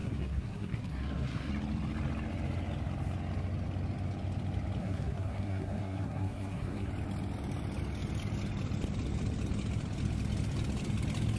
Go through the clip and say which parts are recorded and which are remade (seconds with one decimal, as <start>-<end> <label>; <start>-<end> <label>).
0.0-1.5 remade; 1.5-4.8 recorded; 4.8-6.9 remade; 6.9-11.4 recorded